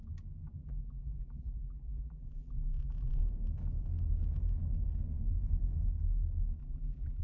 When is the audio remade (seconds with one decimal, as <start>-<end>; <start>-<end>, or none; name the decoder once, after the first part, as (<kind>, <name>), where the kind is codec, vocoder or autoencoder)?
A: 0.6-3.2 (vocoder, BigVGAN v2); 6.6-7.2